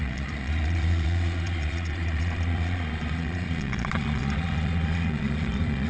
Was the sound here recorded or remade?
remade